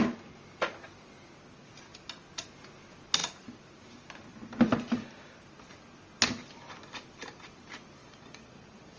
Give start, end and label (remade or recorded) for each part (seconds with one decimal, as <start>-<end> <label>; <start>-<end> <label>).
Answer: 0.0-8.0 recorded; 8.0-9.0 remade